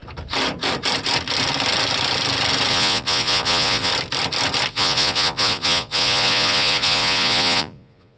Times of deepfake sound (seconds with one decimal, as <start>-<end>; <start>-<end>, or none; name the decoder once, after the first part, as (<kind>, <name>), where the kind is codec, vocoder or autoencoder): 2.7-3.9 (vocoder, Vocos); 4.7-8.2